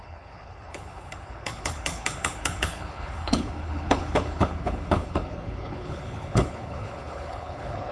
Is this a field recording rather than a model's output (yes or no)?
no